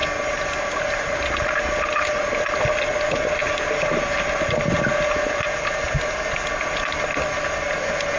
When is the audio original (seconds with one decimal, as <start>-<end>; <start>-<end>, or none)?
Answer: 0.0-8.2

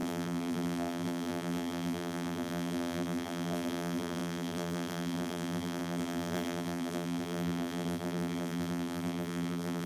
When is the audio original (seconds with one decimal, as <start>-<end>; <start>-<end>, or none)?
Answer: none

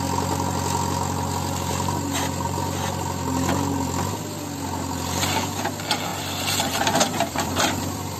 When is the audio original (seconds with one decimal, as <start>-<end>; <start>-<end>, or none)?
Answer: 0.0-6.1